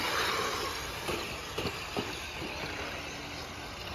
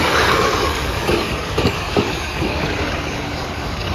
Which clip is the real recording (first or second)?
first